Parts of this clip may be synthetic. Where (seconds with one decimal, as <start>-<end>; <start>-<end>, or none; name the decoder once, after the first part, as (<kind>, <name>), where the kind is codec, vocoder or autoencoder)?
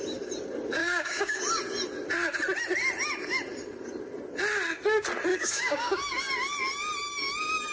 0.8-1.4 (codec, DAC); 5.3-6.2